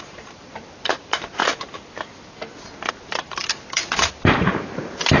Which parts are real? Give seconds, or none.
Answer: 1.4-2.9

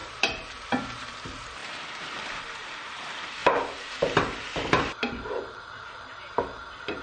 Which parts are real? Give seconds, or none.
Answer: none